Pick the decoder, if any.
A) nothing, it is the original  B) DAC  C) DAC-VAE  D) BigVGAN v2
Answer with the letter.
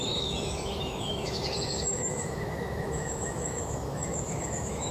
C